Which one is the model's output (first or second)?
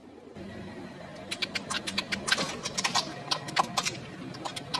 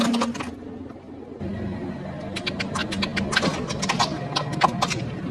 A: first